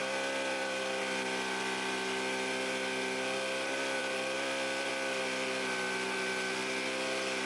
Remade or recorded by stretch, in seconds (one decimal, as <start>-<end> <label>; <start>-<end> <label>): 0.0-1.0 remade; 1.0-4.0 recorded; 4.0-4.9 remade; 4.9-7.5 recorded